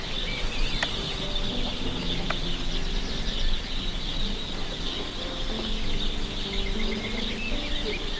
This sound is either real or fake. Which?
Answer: real